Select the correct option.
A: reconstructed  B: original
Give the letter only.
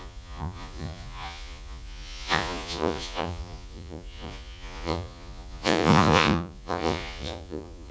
A